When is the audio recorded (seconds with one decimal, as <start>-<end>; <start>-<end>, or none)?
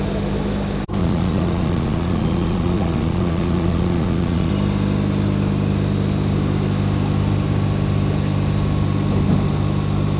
0.0-1.0; 4.5-10.2